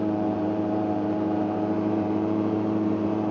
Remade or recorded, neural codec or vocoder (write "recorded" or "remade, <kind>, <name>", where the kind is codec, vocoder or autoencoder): remade, vocoder, BigVGAN v2